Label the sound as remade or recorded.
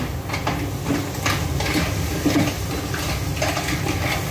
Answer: recorded